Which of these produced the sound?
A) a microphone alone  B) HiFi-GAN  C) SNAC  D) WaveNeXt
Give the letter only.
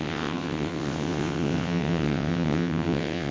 D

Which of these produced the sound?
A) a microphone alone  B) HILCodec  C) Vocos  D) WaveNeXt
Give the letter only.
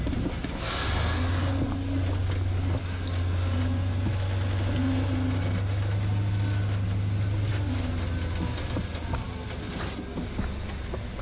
A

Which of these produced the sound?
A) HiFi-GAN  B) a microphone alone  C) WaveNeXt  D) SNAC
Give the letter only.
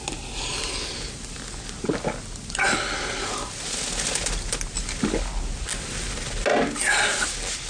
B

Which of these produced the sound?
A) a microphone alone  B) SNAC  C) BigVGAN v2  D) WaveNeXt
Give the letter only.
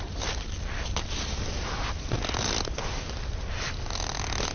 A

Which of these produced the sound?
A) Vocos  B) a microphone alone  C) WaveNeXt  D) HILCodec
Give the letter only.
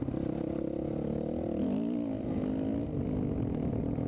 B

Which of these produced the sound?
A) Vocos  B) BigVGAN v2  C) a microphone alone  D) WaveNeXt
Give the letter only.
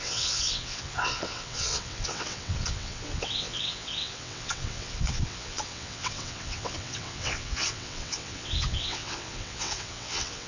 D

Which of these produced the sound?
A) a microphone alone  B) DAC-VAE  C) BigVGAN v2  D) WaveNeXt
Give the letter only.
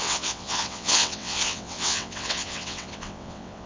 D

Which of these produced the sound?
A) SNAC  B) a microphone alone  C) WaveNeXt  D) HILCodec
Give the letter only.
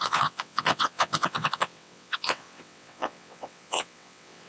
C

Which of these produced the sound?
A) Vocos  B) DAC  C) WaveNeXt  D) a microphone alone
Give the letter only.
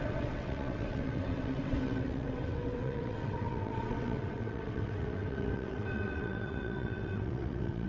C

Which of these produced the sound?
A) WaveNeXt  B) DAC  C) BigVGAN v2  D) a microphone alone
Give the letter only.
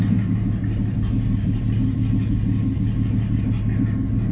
D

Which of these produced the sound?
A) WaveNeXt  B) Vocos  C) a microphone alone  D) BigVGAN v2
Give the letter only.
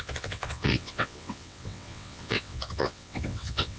A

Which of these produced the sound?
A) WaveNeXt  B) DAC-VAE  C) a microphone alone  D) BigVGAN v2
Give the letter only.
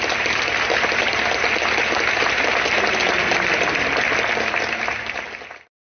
C